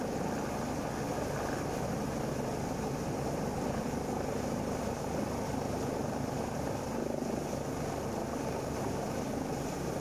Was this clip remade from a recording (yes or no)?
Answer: no